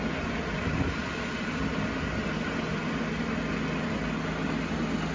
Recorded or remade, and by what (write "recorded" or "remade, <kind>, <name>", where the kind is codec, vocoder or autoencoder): recorded